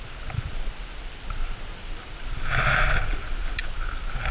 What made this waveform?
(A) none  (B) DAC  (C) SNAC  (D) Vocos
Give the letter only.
A